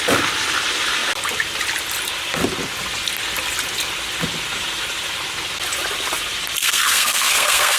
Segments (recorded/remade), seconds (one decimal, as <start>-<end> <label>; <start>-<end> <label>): 0.0-6.6 recorded; 6.6-7.8 remade